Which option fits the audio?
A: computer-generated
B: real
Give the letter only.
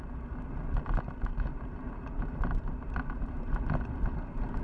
B